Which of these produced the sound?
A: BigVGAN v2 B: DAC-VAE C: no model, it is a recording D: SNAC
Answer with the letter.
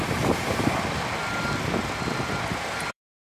A